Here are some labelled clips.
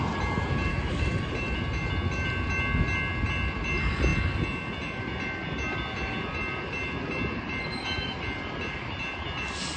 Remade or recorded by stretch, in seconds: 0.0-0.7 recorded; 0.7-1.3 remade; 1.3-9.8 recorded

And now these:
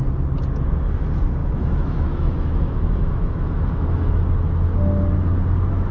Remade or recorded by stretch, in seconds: 0.0-1.4 recorded; 1.4-4.2 remade; 4.2-5.9 recorded

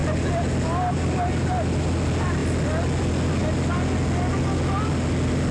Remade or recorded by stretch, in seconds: 0.0-5.5 recorded